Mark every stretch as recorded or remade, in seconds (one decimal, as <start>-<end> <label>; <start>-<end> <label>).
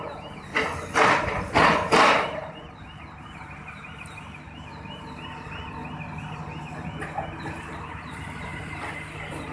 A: 0.0-0.5 remade; 0.5-1.5 recorded; 1.5-4.7 remade; 4.7-7.3 recorded; 7.3-9.5 remade